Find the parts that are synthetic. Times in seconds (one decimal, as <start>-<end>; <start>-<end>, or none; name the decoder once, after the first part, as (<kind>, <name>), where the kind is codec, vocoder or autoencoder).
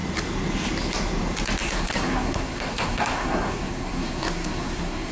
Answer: 1.6-5.1 (codec, SNAC)